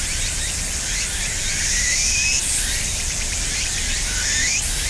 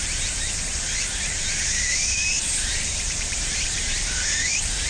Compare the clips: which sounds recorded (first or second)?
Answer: first